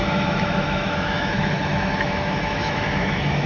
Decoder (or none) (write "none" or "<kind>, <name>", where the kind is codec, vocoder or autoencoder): autoencoder, DAC-VAE